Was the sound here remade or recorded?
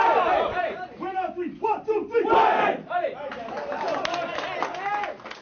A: recorded